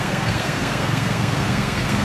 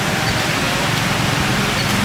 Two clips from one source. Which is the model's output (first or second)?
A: first